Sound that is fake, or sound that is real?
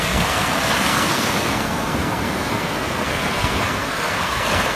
fake